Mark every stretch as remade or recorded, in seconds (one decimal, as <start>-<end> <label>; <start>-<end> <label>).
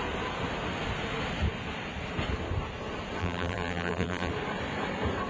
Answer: 0.0-3.2 recorded; 3.2-4.3 remade; 4.3-5.3 recorded